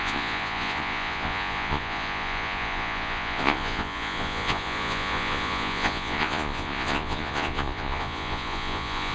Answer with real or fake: fake